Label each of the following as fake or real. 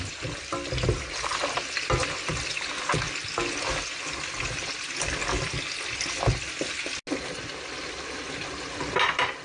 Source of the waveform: real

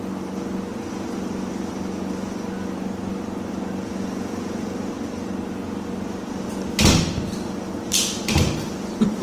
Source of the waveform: real